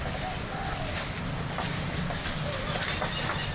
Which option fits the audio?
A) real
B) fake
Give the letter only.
A